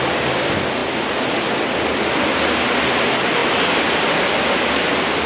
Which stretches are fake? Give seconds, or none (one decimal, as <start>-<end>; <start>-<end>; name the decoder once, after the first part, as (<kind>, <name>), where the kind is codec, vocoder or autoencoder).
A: none